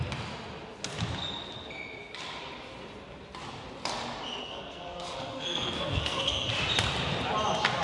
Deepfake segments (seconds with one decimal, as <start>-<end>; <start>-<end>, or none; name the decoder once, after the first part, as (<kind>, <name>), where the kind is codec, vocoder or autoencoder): 4.4-6.5 (codec, SNAC)